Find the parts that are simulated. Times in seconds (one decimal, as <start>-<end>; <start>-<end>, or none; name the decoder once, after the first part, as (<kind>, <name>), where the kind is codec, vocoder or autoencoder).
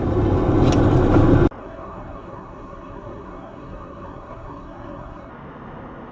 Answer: 1.6-5.3 (codec, SNAC)